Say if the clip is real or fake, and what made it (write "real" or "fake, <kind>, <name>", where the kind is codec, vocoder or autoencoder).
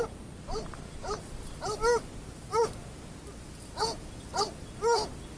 real